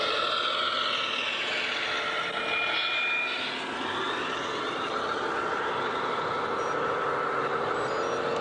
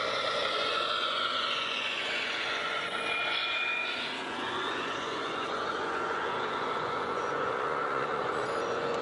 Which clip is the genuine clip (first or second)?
first